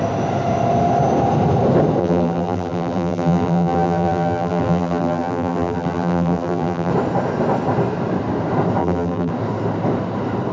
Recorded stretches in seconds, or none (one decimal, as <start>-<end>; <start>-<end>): 0.0-2.0; 6.9-8.8; 9.3-10.5